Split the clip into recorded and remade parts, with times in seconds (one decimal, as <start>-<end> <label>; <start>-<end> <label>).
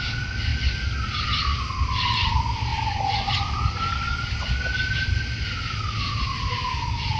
0.0-7.2 recorded